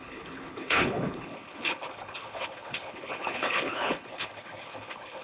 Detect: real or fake fake